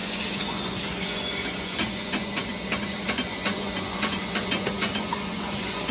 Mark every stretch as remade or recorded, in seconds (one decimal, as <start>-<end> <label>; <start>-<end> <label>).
0.0-5.9 remade